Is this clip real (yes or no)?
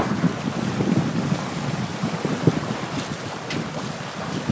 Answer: yes